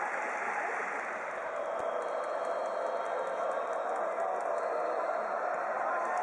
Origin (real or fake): real